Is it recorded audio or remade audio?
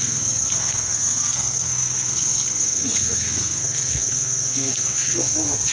remade